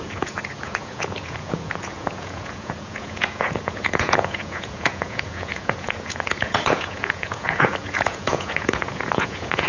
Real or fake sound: fake